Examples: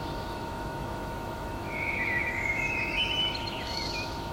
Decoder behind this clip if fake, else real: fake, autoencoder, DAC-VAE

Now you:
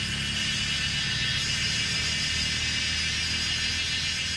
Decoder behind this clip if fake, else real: real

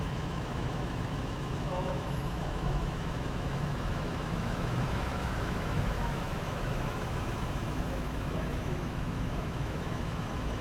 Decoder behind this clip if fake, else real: fake, autoencoder, DAC-VAE